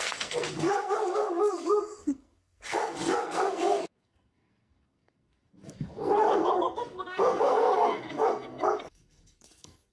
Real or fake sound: fake